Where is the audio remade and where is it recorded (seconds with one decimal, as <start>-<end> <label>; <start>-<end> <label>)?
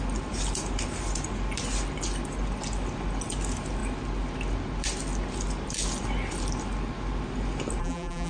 0.0-7.8 recorded; 7.8-8.3 remade